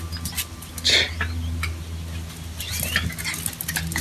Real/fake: real